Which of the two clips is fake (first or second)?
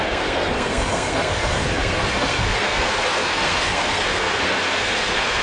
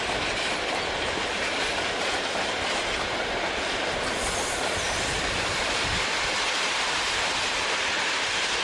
first